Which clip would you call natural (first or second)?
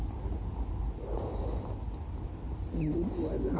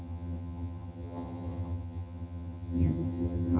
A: first